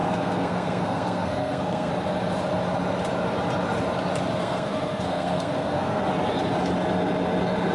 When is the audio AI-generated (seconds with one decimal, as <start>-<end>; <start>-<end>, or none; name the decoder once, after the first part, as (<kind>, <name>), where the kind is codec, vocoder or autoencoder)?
0.0-1.9 (codec, SNAC); 4.4-6.0